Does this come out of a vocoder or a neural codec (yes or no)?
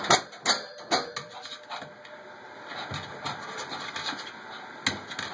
no